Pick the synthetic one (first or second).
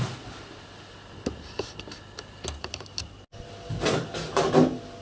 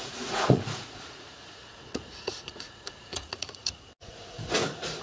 second